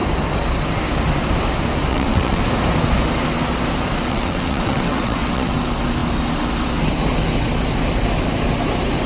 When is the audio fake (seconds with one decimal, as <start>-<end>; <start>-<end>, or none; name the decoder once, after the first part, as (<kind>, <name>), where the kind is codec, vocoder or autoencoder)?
1.9-2.4 (vocoder, WaveNeXt); 4.1-5.5